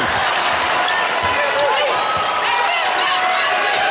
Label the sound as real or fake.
real